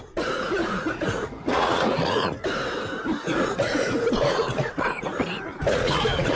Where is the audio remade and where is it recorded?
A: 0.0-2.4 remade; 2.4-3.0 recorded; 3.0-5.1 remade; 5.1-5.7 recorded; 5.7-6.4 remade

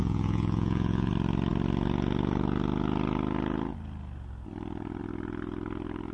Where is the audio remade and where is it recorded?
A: 0.0-1.1 remade; 1.1-6.1 recorded

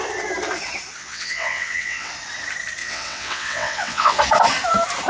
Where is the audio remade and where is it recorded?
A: 0.0-1.0 recorded; 1.0-2.1 remade; 2.1-2.8 recorded; 2.8-4.2 remade; 4.2-5.1 recorded

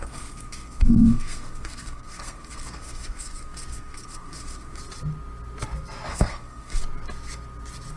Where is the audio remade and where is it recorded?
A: 0.0-4.8 remade; 4.8-6.1 recorded; 6.1-6.8 remade; 6.8-8.0 recorded

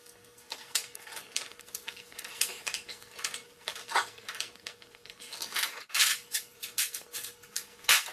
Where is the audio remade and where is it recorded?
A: 0.0-8.1 remade

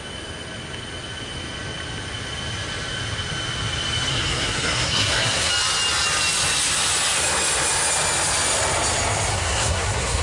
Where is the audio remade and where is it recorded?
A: 0.0-4.1 recorded; 4.1-5.5 remade; 5.5-9.3 recorded; 9.3-10.2 remade

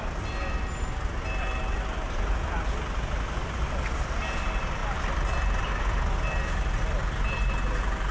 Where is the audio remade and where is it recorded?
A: 0.0-8.1 recorded

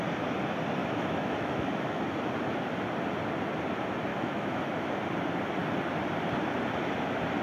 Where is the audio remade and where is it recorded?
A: 0.0-0.8 recorded; 0.8-2.0 remade; 2.0-4.1 recorded; 4.1-4.9 remade; 4.9-7.4 recorded